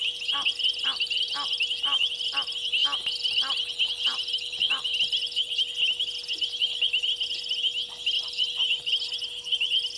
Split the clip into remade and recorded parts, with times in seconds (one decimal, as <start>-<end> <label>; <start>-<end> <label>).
0.0-10.0 recorded